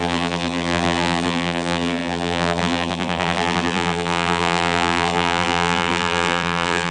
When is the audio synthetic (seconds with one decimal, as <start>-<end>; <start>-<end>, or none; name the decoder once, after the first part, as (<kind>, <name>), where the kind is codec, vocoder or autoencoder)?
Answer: 0.0-6.9 (vocoder, BigVGAN v2)